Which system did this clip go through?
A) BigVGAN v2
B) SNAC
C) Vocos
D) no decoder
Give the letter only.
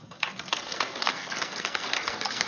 B